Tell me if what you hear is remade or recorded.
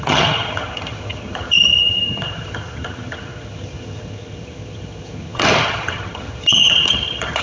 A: remade